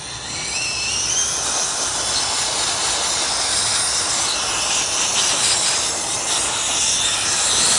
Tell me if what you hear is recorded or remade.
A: recorded